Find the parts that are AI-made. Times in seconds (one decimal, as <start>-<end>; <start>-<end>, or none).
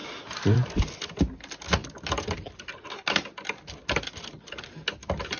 0.0-0.7; 1.8-2.9